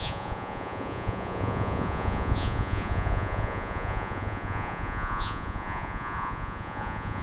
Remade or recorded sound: remade